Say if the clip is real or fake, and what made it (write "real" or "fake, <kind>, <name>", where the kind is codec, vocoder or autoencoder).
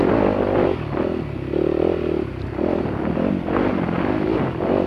real